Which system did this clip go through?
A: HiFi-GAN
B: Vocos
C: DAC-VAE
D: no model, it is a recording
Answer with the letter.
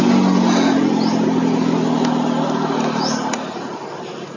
D